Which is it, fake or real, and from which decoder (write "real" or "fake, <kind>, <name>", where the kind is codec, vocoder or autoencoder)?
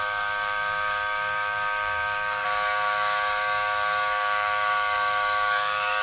fake, codec, DAC